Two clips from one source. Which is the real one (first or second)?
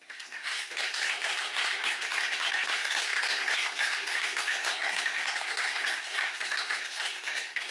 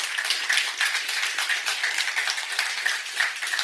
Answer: second